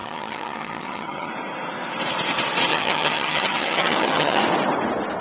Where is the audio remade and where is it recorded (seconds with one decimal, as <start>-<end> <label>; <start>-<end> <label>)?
0.0-1.3 remade; 1.3-2.7 recorded; 2.7-4.4 remade; 4.4-5.2 recorded